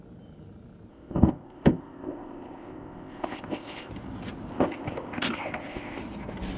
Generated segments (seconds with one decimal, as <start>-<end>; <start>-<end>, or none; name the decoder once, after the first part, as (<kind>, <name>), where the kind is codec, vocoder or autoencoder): 0.9-3.9 (codec, ZipCodec); 4.5-6.0